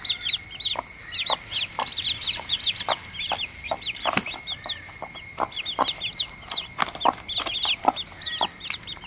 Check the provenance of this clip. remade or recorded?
recorded